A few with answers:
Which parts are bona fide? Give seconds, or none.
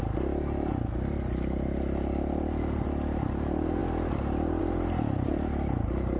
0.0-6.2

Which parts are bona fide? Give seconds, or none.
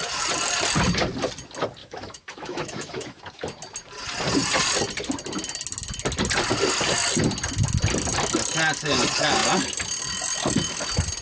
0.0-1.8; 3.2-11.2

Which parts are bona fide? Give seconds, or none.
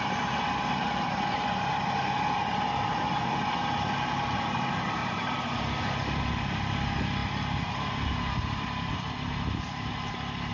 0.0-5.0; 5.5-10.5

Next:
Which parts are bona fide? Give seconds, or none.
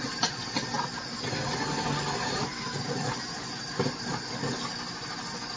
0.0-5.6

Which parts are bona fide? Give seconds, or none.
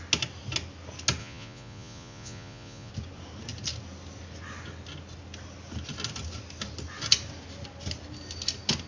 0.0-1.2; 2.9-8.9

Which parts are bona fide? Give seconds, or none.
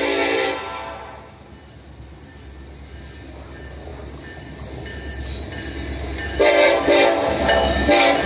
0.0-8.3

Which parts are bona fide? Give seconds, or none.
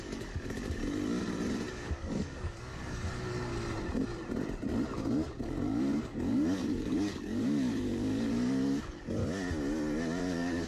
0.8-1.7; 3.5-5.4; 9.2-10.2